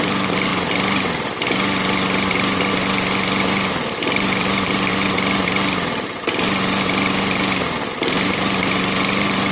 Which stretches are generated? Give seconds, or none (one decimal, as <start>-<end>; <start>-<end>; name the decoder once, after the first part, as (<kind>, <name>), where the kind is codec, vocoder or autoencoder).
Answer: 0.0-0.5 (vocoder, BigVGAN v2); 3.7-4.9; 7.9-9.5